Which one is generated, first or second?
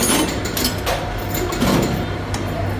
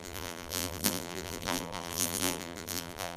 second